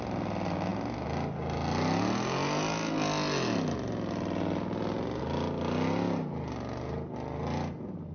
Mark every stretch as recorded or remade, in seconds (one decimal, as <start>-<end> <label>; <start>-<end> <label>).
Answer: 0.0-8.1 recorded